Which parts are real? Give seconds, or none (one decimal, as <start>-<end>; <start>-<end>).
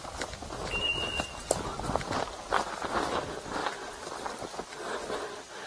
0.0-3.6; 5.1-5.7